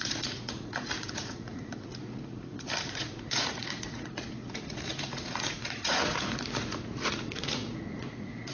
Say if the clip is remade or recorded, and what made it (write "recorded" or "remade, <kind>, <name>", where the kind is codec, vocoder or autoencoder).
remade, vocoder, Vocos